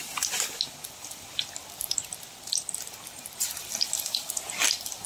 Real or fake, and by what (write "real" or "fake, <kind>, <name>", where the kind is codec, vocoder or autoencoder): fake, vocoder, BigVGAN v2